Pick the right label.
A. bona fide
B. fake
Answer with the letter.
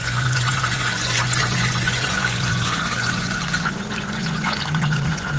B